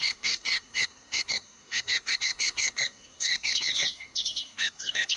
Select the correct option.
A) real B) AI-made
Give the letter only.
B